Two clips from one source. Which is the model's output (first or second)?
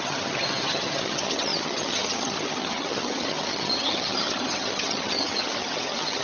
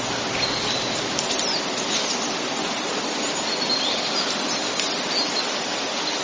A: first